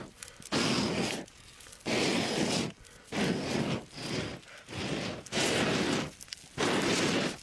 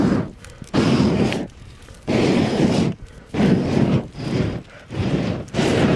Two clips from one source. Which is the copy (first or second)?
second